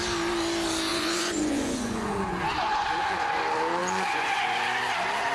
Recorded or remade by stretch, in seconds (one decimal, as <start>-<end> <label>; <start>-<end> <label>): 0.0-0.9 recorded; 0.9-3.4 remade; 3.4-3.8 recorded; 3.8-4.8 remade; 4.8-5.3 recorded